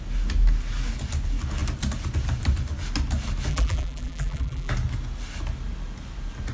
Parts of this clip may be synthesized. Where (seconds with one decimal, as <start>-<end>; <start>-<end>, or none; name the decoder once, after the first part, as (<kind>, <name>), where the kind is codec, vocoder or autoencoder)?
3.5-4.7 (vocoder, BigVGAN v2)